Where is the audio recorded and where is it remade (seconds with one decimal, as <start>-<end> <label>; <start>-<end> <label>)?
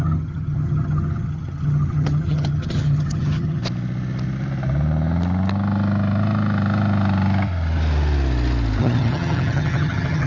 0.0-3.6 remade; 3.6-8.8 recorded; 8.8-10.3 remade